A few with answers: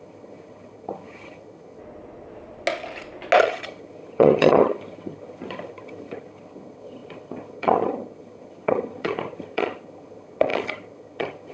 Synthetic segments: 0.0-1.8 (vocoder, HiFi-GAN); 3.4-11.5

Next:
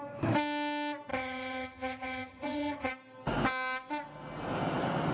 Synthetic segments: 1.1-2.9 (vocoder, HiFi-GAN)

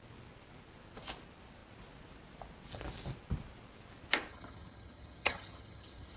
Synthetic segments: 4.3-6.2 (vocoder, HiFi-GAN)

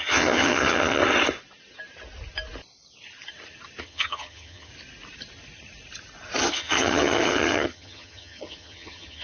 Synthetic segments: 0.0-1.0 (vocoder, HiFi-GAN); 3.8-4.7; 6.4-9.2

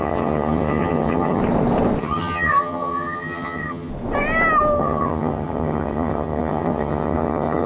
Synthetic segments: 0.0-1.4 (vocoder, HiFi-GAN); 2.0-3.9; 4.8-7.7

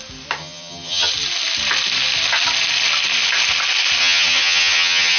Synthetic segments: 0.4-1.1 (vocoder, HiFi-GAN); 4.0-5.2

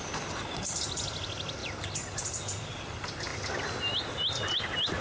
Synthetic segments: none

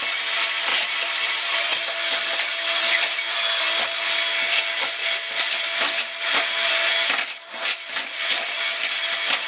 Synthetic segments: none